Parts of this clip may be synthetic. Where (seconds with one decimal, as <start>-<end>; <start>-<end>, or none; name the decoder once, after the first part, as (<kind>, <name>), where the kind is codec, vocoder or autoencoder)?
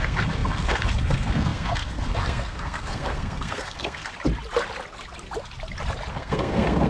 0.0-4.1 (codec, SNAC); 6.1-6.9